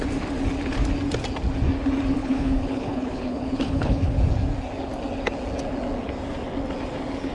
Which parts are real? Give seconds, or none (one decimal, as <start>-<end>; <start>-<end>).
0.0-2.2; 4.2-7.3